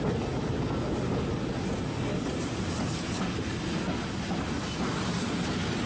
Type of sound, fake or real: real